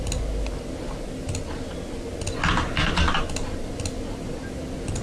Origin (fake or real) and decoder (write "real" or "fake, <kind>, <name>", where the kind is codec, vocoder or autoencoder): real